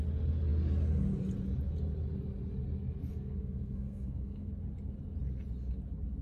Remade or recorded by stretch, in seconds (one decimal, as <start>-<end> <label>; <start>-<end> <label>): 0.0-3.1 recorded; 3.1-4.5 remade; 4.5-6.2 recorded